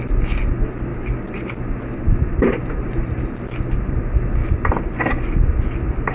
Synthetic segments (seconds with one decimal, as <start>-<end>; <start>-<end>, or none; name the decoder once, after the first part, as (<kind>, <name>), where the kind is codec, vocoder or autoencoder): none